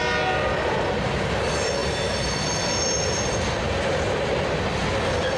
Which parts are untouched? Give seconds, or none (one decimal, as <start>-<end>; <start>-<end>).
0.0-5.4

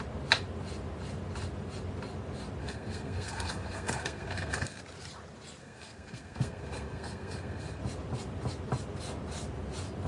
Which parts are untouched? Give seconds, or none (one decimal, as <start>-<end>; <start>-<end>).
0.0-2.6; 4.8-5.6; 7.8-10.1

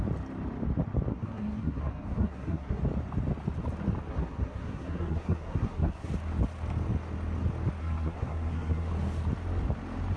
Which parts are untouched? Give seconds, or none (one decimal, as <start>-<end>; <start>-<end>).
0.0-1.1; 2.8-4.1; 6.1-7.8; 8.9-10.2